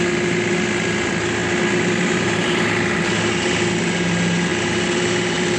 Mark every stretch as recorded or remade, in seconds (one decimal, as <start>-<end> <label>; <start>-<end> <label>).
0.0-5.6 recorded